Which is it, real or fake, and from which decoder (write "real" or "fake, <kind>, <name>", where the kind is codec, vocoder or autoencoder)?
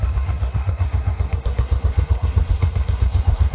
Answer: fake, codec, SNAC